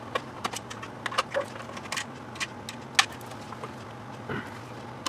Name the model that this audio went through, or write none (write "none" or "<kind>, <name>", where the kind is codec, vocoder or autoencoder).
none